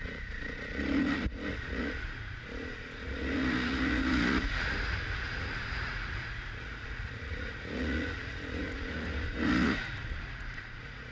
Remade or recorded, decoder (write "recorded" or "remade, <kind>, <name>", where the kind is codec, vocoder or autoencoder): remade, vocoder, Vocos